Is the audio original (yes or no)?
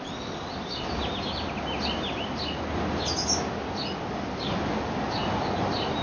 yes